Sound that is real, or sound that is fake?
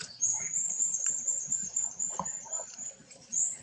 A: fake